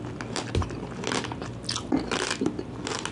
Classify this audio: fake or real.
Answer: real